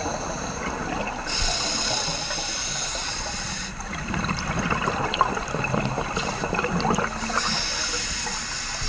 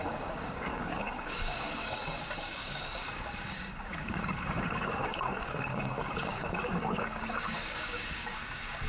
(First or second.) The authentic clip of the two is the first